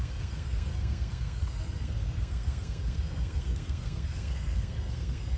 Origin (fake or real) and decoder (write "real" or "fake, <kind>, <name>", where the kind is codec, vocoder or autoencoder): fake, codec, SNAC